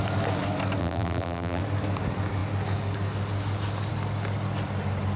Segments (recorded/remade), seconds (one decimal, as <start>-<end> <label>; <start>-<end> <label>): 0.0-0.8 recorded; 0.8-1.6 remade; 1.6-5.2 recorded